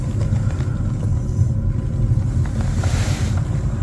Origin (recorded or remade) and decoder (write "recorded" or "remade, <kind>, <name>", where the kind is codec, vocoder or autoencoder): recorded